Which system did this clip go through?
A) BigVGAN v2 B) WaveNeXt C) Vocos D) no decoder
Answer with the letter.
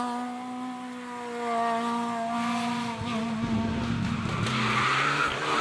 D